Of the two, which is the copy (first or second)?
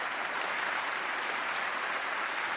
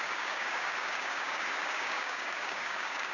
second